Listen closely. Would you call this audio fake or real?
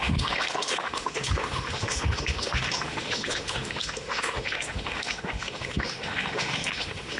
fake